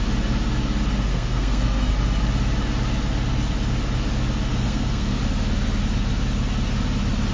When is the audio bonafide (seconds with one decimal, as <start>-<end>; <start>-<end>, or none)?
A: 0.0-1.1; 1.9-4.5; 5.2-7.3